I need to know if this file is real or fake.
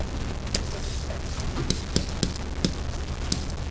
real